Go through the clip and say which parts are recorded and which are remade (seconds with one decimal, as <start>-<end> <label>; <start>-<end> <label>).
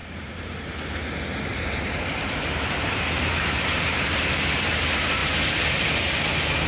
0.0-0.6 remade; 0.6-1.5 recorded; 1.5-4.8 remade; 4.8-6.7 recorded